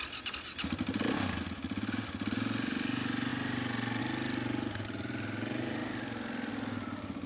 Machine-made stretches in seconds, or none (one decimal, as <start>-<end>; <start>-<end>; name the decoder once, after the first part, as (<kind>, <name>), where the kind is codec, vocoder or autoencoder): none